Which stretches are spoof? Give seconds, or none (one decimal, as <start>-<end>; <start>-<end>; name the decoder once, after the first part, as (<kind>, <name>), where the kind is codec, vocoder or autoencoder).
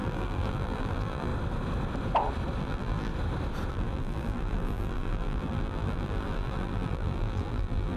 0.0-1.3 (vocoder, BigVGAN v2); 2.6-3.1; 3.7-8.0